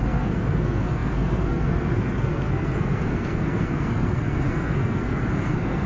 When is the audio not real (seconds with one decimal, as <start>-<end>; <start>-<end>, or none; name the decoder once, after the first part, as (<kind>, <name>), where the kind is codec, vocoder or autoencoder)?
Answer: 0.0-5.9 (codec, SNAC)